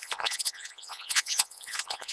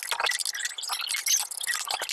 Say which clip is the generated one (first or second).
first